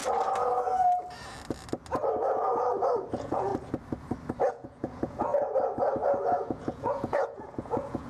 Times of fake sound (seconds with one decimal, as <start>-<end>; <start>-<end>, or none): 3.1-3.5; 4.5-5.3; 6.1-8.1